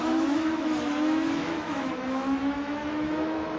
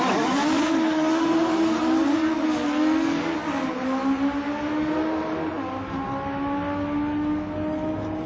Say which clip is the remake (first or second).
first